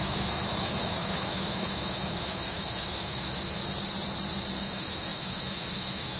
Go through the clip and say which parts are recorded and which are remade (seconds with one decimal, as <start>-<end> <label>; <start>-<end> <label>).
0.0-3.6 remade; 3.6-4.6 recorded; 4.6-6.2 remade